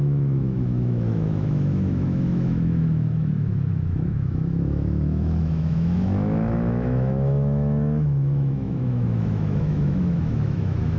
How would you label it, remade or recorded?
remade